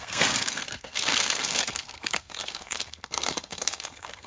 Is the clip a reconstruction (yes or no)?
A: yes